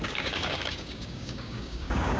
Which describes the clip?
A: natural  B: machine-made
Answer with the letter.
B